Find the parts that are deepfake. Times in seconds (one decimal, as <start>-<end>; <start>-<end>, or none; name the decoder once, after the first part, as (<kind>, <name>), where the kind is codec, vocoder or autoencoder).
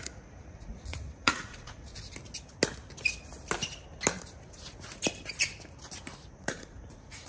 0.0-1.9 (vocoder, Vocos); 6.3-7.3